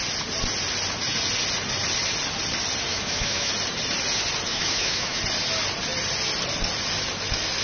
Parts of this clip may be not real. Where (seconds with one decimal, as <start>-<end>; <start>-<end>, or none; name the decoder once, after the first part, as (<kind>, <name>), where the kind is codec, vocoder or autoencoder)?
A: 2.9-3.5 (autoencoder, DAC-VAE); 4.5-5.2